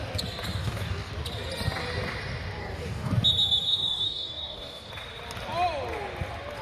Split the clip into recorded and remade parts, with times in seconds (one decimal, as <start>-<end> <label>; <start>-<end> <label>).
0.0-0.6 recorded; 0.6-1.1 remade; 1.1-2.6 recorded; 2.6-3.1 remade; 3.1-3.7 recorded; 3.7-4.9 remade; 4.9-6.6 recorded

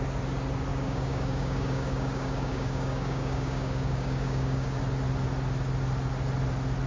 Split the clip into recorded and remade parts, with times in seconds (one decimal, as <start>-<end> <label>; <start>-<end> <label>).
0.0-0.7 recorded; 0.7-4.8 remade; 4.8-6.9 recorded

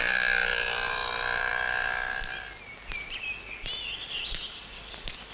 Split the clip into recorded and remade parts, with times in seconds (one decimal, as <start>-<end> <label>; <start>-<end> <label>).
0.0-5.3 recorded

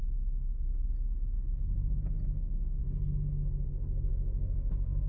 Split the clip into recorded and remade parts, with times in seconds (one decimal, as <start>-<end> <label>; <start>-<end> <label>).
0.0-2.4 recorded; 2.4-2.8 remade; 2.8-3.7 recorded; 3.7-5.1 remade